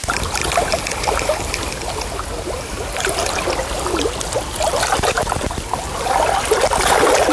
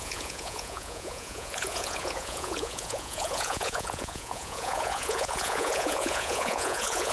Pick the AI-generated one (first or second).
second